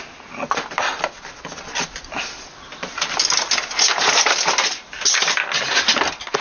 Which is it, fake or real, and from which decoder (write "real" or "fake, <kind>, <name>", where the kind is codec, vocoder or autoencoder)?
real